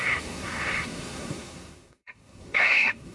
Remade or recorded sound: remade